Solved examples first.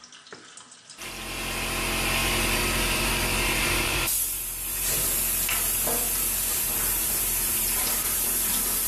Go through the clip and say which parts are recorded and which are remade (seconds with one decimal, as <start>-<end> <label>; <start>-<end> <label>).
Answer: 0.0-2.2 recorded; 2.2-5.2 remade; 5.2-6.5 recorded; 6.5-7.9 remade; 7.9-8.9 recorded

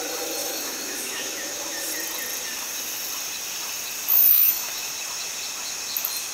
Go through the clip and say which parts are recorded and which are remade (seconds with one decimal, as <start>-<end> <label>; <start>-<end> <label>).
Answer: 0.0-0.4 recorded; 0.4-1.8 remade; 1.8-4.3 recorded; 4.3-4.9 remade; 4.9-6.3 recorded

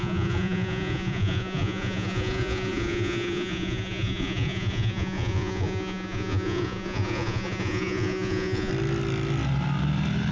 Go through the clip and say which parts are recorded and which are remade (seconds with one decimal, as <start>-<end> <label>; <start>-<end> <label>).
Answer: 0.0-8.7 remade; 8.7-10.3 recorded

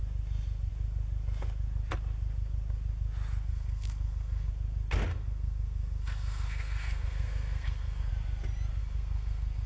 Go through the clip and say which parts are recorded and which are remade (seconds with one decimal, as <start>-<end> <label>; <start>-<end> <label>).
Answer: 0.0-3.5 recorded; 3.5-4.5 remade; 4.5-5.1 recorded; 5.1-8.1 remade; 8.1-8.8 recorded; 8.8-9.7 remade

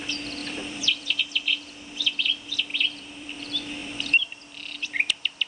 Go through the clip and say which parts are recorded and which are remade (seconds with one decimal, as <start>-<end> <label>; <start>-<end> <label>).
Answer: 0.0-0.4 recorded; 0.4-1.2 remade; 1.2-2.7 recorded; 2.7-3.4 remade; 3.4-3.8 recorded; 3.8-5.5 remade

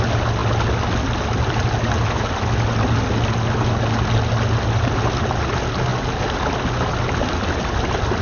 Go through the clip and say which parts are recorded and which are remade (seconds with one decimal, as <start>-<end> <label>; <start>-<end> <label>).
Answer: 0.0-8.2 recorded

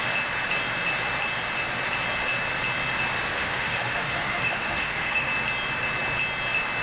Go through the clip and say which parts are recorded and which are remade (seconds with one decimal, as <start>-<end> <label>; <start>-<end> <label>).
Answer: 0.0-3.3 recorded; 3.3-5.3 remade; 5.3-6.8 recorded

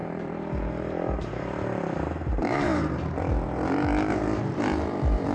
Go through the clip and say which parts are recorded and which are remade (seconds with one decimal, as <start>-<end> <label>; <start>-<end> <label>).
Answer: 0.0-5.3 remade